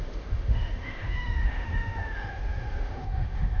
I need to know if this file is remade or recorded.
remade